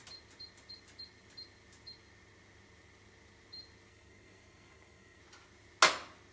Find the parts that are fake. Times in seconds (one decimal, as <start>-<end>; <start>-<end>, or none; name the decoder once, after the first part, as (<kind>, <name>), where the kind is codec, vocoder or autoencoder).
3.9-5.2 (codec, SNAC)